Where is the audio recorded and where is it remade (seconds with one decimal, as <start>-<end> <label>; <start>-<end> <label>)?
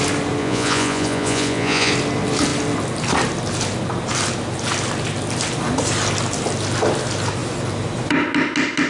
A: 0.0-0.4 recorded; 0.4-1.9 remade; 1.9-8.9 recorded